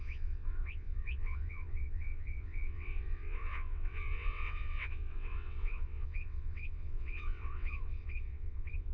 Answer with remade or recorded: remade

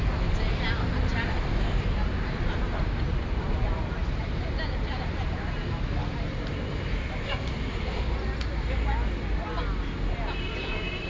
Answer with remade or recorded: recorded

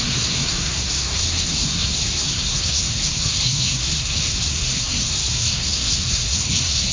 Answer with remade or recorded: remade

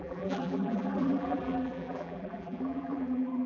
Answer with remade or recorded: remade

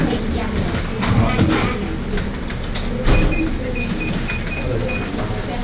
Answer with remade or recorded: recorded